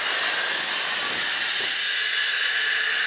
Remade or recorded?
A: recorded